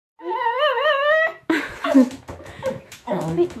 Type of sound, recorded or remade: remade